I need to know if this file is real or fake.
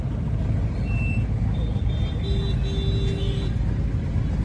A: real